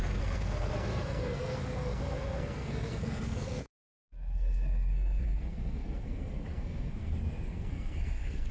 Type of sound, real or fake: fake